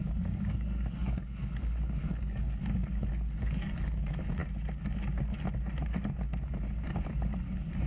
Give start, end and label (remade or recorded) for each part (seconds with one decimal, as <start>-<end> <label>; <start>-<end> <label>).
0.0-4.4 remade; 4.4-7.9 recorded